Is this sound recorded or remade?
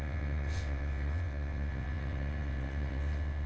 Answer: remade